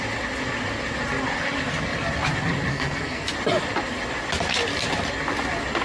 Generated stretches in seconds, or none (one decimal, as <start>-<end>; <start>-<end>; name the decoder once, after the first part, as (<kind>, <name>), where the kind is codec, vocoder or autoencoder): 2.7-3.3 (codec, SNAC)